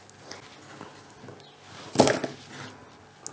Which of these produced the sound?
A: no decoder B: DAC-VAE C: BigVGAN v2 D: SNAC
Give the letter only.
A